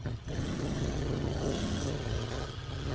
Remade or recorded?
remade